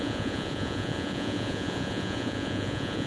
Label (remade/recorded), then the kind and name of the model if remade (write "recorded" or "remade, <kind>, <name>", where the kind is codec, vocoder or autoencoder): remade, vocoder, Vocos